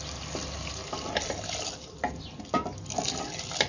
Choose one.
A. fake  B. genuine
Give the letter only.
B